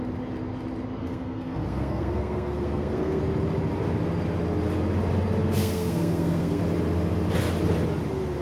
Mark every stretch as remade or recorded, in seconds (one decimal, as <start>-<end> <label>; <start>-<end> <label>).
0.0-1.0 recorded; 1.0-3.2 remade; 3.2-5.6 recorded; 5.6-6.6 remade; 6.6-8.4 recorded

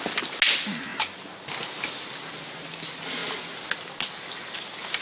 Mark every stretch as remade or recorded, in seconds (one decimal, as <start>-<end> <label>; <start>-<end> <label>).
0.0-5.0 recorded

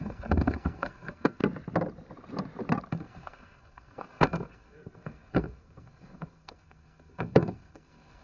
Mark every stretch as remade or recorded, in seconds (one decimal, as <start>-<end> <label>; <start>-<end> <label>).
0.0-1.4 remade; 1.4-2.9 recorded; 2.9-8.2 remade

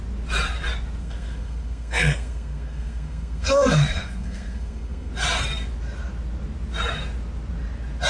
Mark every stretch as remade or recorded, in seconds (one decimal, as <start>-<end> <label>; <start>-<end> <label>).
0.0-1.0 recorded; 1.0-5.1 remade; 5.1-8.1 recorded

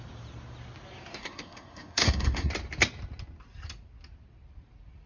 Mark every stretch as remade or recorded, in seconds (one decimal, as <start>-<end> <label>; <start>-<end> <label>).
0.0-1.2 recorded; 1.2-2.5 remade; 2.5-5.1 recorded